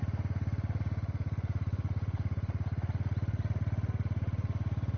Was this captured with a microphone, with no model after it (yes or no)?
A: yes